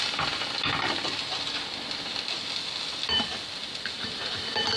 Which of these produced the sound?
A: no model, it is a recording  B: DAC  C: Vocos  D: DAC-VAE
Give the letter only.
A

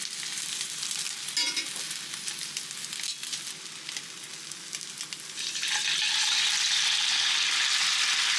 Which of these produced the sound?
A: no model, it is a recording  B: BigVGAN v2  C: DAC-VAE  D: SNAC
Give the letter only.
A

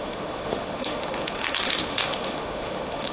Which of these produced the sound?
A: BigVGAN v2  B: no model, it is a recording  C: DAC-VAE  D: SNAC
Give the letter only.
C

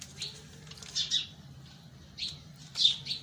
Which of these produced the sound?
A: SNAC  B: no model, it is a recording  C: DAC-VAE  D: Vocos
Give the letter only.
B